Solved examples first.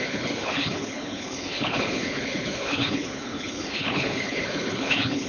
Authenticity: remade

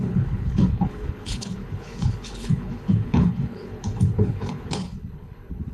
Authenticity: remade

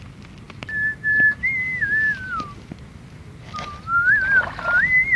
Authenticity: recorded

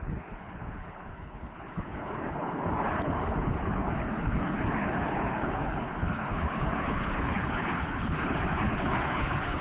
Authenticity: remade